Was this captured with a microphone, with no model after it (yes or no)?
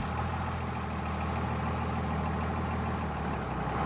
yes